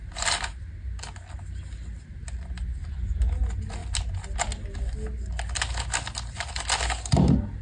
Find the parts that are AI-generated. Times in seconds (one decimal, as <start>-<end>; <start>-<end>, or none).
none